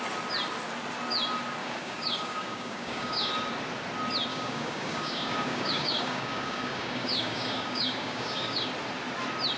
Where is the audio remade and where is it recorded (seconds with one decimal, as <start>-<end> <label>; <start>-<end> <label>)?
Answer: 0.0-1.6 recorded; 1.6-3.3 remade; 3.3-4.3 recorded; 4.3-8.7 remade; 8.7-9.6 recorded